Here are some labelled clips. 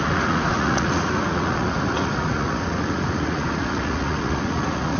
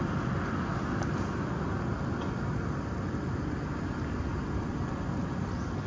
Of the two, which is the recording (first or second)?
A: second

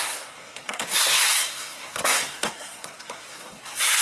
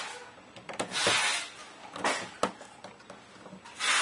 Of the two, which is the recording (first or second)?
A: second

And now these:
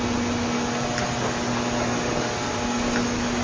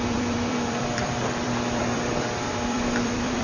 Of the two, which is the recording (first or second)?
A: first